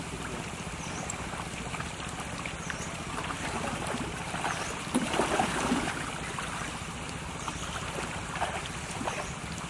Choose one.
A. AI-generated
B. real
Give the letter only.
B